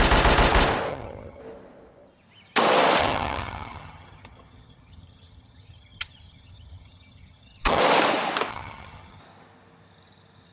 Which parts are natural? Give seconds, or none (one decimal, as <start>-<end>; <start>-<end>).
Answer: 0.0-0.9; 1.4-3.0; 7.8-8.5; 9.2-10.5